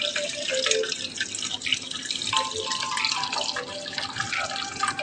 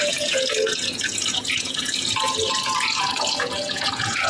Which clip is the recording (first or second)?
first